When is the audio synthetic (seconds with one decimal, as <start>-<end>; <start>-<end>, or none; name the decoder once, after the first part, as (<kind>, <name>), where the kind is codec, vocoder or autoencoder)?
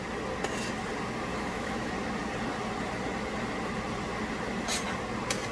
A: 1.3-1.9 (autoencoder, DAC-VAE)